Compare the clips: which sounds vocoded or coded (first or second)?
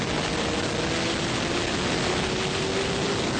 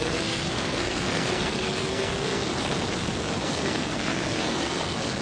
second